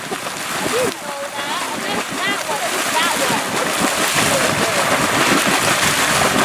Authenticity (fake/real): real